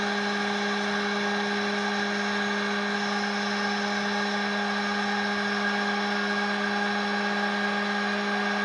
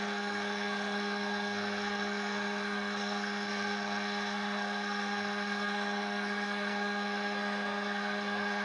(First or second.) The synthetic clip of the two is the second